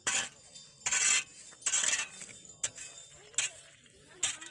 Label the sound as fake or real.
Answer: real